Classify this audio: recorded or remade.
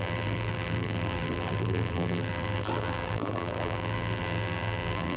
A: remade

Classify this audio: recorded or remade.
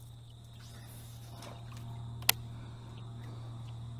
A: recorded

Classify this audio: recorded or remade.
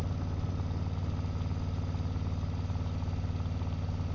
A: recorded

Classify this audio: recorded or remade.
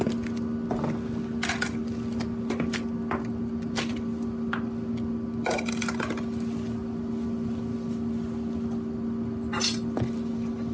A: recorded